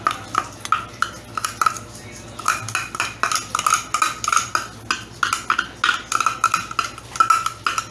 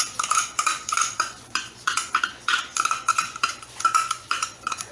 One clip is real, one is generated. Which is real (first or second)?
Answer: first